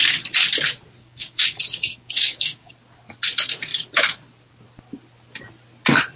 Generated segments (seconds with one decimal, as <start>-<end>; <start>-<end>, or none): 1.0-2.7